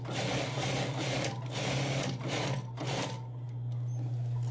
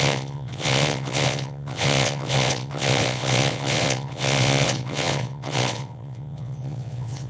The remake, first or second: second